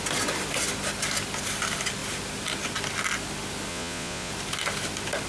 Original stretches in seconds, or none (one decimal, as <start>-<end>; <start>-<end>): 0.0-3.7; 4.3-5.3